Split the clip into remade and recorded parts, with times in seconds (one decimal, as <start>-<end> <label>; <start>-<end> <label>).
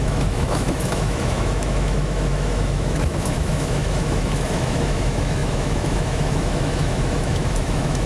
0.0-8.1 remade